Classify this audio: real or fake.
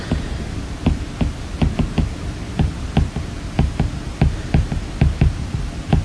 real